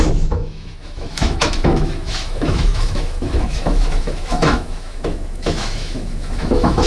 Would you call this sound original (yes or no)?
no